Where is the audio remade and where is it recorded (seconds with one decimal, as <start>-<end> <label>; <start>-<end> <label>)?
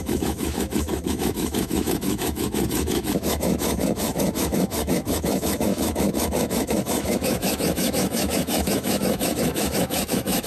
0.0-10.5 remade